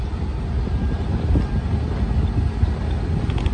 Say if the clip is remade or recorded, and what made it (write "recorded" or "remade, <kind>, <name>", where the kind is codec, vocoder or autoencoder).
recorded